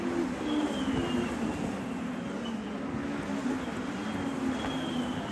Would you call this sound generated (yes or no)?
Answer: no